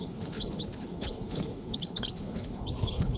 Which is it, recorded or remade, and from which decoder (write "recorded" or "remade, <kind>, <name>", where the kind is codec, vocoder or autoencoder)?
remade, codec, HILCodec